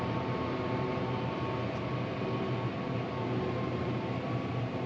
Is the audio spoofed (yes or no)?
no